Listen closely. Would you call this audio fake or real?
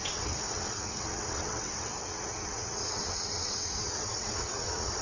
fake